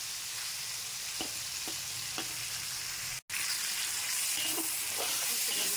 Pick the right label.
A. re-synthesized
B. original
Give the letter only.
B